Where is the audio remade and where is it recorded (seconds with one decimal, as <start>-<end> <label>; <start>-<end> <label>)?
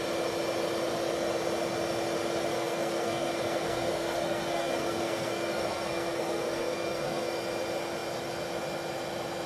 0.0-2.5 recorded; 2.5-7.3 remade; 7.3-9.5 recorded